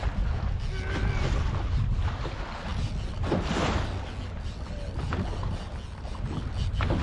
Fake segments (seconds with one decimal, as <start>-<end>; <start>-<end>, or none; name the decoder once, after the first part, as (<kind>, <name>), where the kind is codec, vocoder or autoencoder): none